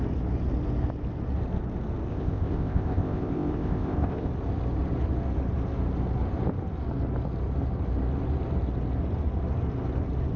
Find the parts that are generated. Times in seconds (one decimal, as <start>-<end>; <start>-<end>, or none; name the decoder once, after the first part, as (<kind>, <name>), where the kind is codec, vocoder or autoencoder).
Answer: 2.1-4.3 (codec, ZipCodec)